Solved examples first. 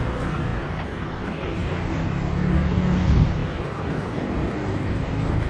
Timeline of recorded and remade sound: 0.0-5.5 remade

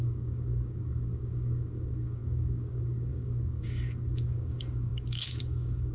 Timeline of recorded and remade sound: 0.0-5.9 remade

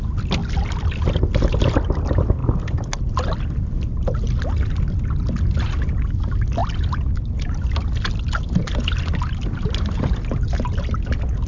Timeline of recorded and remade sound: 0.0-11.5 recorded

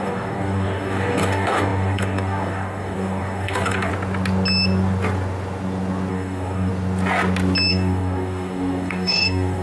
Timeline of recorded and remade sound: 0.0-3.9 remade; 3.9-6.1 recorded; 6.1-6.7 remade; 6.7-7.7 recorded; 7.7-9.6 remade

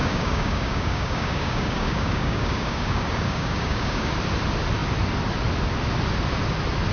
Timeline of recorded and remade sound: 0.0-4.1 remade; 4.1-6.9 recorded

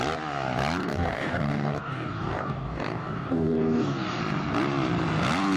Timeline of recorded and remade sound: 0.0-0.8 recorded; 0.8-4.2 remade; 4.2-5.6 recorded

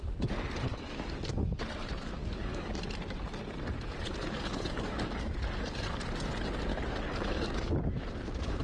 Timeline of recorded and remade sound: 0.0-0.7 recorded; 0.7-1.6 remade; 1.6-2.2 recorded; 2.2-2.8 remade; 2.8-4.1 recorded; 4.1-5.4 remade; 5.4-6.7 recorded; 6.7-7.7 remade; 7.7-8.6 recorded